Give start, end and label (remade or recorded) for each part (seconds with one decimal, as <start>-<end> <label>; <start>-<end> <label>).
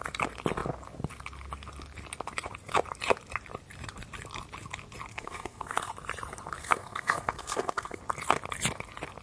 0.0-5.1 recorded; 5.1-5.9 remade; 5.9-6.6 recorded; 6.6-8.0 remade; 8.0-9.2 recorded